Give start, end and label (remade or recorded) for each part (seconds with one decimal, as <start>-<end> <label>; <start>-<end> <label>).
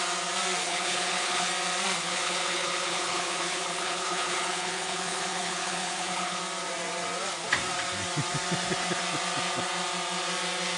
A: 0.0-0.6 recorded; 0.6-1.5 remade; 1.5-2.0 recorded; 2.0-6.4 remade; 6.4-10.8 recorded